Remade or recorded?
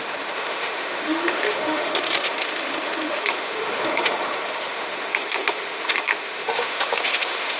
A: remade